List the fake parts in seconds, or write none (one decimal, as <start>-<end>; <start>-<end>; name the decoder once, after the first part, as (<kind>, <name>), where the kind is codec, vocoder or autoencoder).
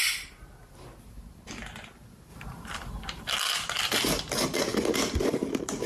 none